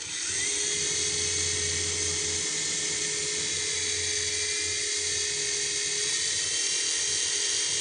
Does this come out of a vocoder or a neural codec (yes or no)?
no